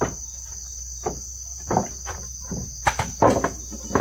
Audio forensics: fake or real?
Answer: real